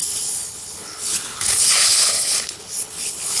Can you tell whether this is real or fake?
fake